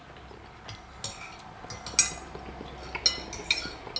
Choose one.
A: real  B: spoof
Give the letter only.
A